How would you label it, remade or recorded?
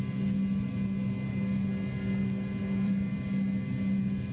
recorded